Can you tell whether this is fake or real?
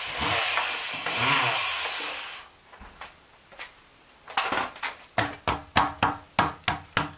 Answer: real